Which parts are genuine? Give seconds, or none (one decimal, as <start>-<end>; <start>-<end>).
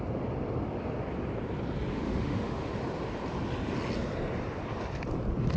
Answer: 0.0-1.9; 2.7-5.6